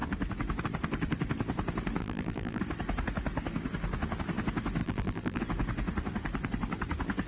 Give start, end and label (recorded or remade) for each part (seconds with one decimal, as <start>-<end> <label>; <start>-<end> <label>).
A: 0.0-2.0 recorded; 2.0-2.6 remade; 2.6-4.8 recorded; 4.8-5.4 remade; 5.4-7.3 recorded